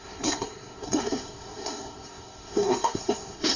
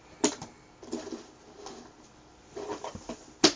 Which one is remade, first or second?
first